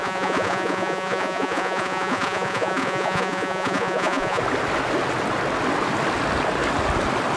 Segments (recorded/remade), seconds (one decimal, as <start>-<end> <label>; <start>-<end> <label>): 0.0-4.4 remade; 4.4-7.4 recorded